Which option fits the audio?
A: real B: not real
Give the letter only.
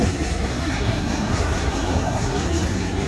B